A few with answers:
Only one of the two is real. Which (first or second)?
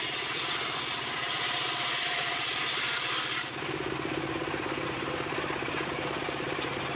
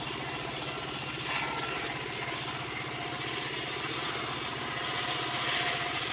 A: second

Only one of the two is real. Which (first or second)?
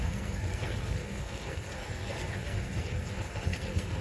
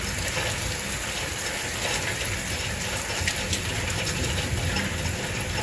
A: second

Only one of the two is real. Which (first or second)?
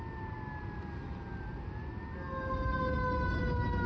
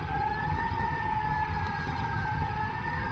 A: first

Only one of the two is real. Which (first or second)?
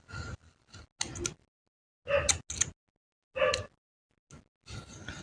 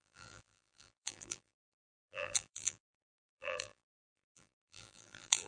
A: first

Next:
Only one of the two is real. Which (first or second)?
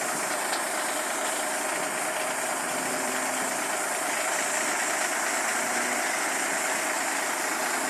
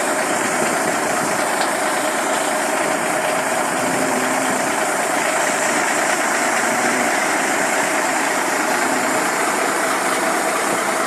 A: first